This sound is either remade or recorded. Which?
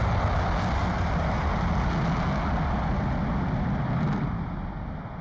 recorded